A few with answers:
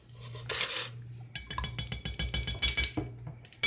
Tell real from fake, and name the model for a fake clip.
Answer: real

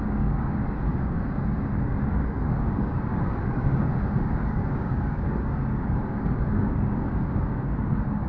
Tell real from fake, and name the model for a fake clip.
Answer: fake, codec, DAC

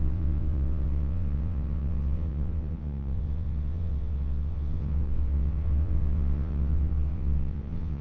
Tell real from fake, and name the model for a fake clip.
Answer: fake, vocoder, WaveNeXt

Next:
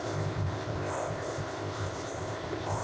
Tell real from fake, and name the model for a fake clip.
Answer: fake, codec, ZipCodec